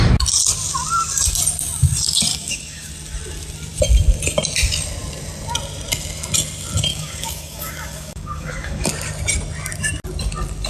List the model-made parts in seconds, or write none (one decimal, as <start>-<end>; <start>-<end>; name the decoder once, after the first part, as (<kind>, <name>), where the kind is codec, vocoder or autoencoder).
2.3-2.9 (codec, DAC); 6.9-8.9